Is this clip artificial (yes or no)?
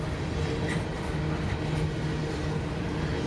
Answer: no